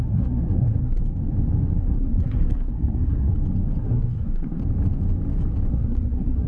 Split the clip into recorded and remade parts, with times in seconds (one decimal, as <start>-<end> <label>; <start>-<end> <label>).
0.0-1.0 remade; 1.0-1.8 recorded; 1.8-3.3 remade; 3.3-3.8 recorded; 3.8-4.6 remade; 4.6-5.7 recorded; 5.7-6.5 remade